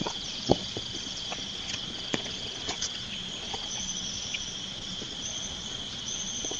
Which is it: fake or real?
fake